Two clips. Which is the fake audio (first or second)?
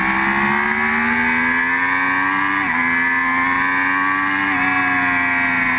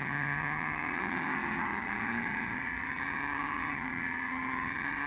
second